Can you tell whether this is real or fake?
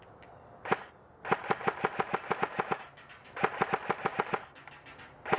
real